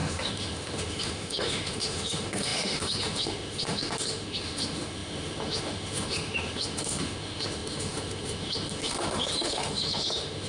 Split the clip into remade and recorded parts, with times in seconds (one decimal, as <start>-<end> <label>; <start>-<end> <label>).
0.0-10.5 remade